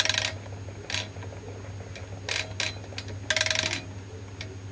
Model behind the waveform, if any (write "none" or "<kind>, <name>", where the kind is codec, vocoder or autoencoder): none